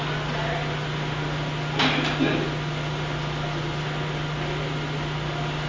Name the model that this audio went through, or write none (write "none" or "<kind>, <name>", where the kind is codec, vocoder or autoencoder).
none